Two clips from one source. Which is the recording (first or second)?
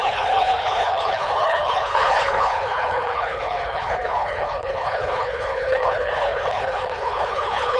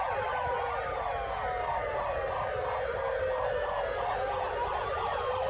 second